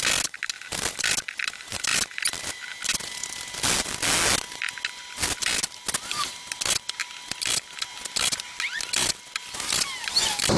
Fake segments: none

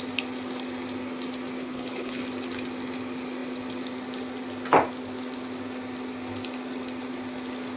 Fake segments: 1.6-2.2

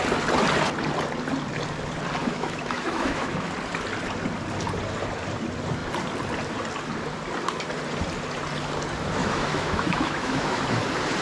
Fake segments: 2.2-3.5; 9.2-10.6

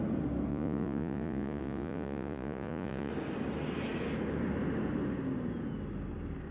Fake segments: 0.5-3.1

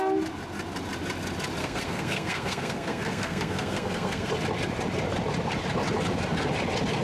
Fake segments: 1.6-4.3

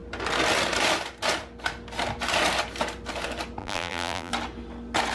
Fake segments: 3.6-4.3

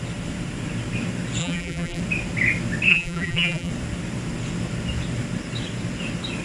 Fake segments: 1.4-2.0; 2.9-3.7

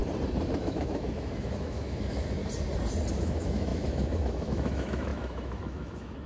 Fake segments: 0.6-2.4; 3.1-6.3